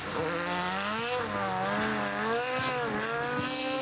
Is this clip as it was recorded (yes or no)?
yes